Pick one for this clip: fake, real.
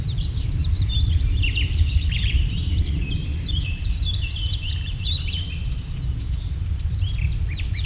fake